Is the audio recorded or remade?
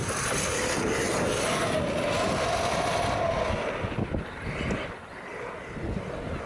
recorded